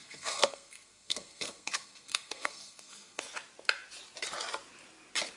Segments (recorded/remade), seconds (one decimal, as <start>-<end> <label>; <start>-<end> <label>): 0.0-3.2 remade; 3.2-5.4 recorded